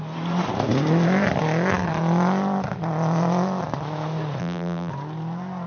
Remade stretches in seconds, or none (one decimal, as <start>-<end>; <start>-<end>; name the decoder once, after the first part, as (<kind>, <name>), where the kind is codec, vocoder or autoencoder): 4.4-4.9 (vocoder, BigVGAN v2)